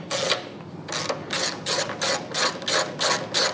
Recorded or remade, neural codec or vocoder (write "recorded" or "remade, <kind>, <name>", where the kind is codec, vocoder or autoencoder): recorded